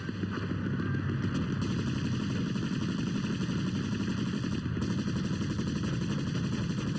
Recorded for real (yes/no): yes